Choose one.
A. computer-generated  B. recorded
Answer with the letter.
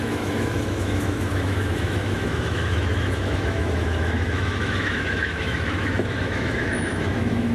A